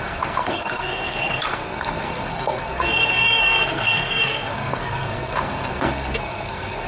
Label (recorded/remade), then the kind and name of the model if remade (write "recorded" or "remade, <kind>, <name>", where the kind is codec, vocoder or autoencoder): remade, codec, SNAC